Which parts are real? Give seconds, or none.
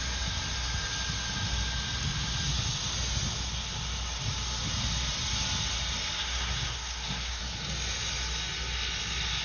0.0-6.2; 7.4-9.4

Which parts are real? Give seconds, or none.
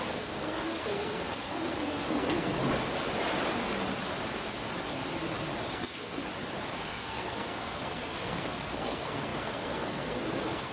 2.6-5.7; 6.2-6.8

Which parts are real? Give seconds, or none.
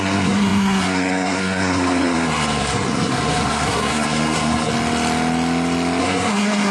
4.7-6.0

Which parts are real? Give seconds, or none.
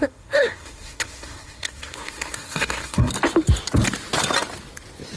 3.1-5.2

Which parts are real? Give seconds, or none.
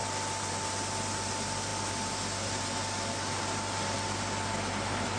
0.0-5.2